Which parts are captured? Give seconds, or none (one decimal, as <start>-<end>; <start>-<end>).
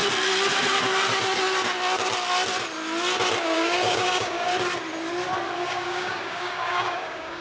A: 0.0-3.4; 4.5-5.6